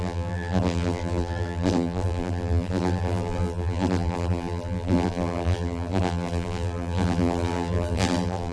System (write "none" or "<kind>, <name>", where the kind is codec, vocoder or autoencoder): vocoder, BigVGAN v2